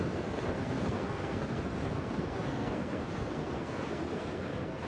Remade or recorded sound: remade